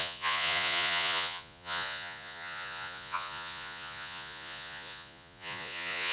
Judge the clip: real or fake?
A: fake